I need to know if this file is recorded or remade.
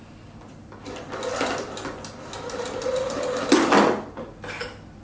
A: recorded